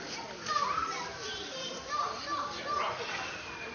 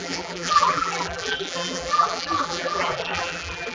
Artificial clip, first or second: second